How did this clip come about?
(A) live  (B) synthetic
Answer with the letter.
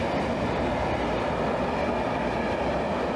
A